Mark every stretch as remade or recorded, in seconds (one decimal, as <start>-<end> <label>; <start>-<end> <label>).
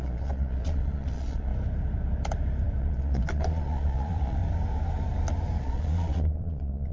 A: 0.0-1.5 remade; 1.5-2.8 recorded; 2.8-4.4 remade; 4.4-5.6 recorded; 5.6-6.9 remade